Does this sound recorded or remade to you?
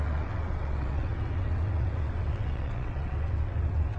remade